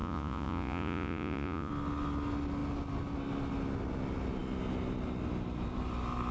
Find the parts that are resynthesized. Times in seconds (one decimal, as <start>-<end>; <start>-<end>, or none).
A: 0.0-1.7